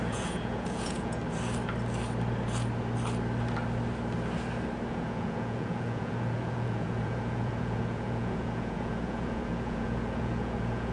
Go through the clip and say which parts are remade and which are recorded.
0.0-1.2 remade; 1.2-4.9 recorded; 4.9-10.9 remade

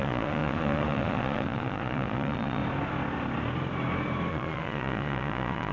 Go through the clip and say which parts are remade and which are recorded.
0.0-2.6 remade; 2.6-4.3 recorded; 4.3-5.7 remade

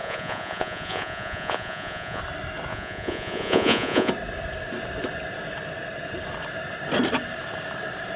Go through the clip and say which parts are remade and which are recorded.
0.0-2.2 remade; 2.2-2.7 recorded; 2.7-4.1 remade; 4.1-8.2 recorded

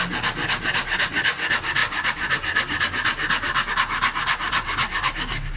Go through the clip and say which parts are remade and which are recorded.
0.0-5.6 recorded

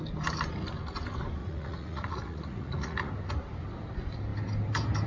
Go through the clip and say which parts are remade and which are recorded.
0.0-1.4 recorded; 1.4-3.1 remade; 3.1-5.1 recorded

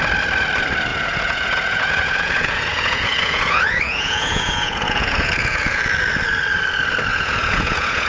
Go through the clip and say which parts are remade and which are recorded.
0.0-0.9 recorded; 0.9-5.8 remade; 5.8-7.1 recorded; 7.1-8.1 remade

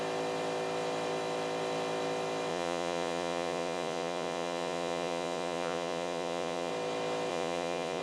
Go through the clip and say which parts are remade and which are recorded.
0.0-2.5 recorded; 2.5-6.7 remade; 6.7-7.3 recorded; 7.3-8.0 remade

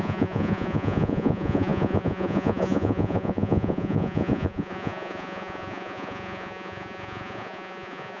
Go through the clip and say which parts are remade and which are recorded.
0.0-8.2 remade